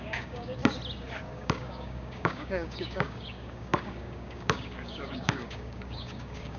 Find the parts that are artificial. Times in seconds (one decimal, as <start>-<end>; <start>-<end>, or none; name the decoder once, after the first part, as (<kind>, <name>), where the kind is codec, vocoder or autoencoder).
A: 0.0-0.6 (codec, DAC); 1.3-6.6